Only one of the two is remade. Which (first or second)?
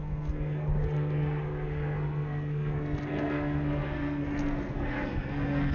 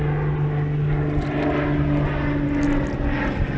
first